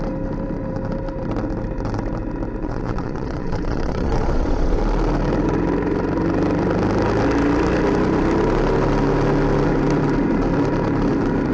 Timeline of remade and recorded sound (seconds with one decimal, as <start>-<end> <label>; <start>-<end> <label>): 0.0-2.6 recorded; 2.6-4.8 remade; 4.8-11.5 recorded